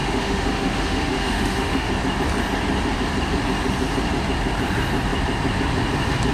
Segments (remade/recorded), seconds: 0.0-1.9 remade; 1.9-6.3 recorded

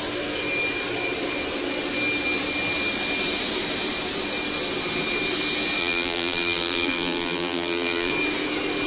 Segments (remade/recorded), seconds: 0.0-5.8 recorded; 5.8-8.1 remade; 8.1-8.9 recorded

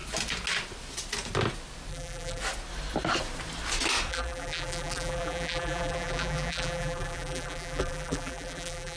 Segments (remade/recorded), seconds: 0.0-1.9 recorded; 1.9-2.4 remade; 2.4-4.1 recorded; 4.1-9.0 remade